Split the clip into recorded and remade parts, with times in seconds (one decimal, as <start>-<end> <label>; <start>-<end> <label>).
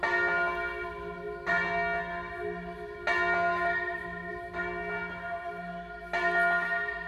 0.0-7.1 recorded